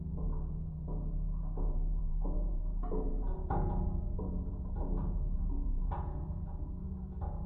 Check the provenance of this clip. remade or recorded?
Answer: remade